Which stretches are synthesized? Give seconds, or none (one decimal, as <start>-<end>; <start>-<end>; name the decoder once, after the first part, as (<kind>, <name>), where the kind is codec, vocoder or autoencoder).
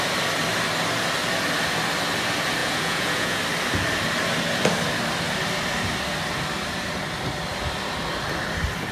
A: 2.6-3.4 (vocoder, Vocos)